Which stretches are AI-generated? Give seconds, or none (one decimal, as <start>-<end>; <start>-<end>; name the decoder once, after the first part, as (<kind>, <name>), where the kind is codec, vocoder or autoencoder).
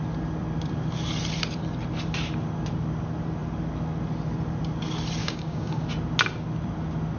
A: 5.2-5.8 (codec, DAC)